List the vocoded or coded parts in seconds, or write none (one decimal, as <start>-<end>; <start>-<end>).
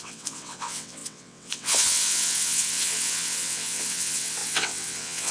0.0-5.3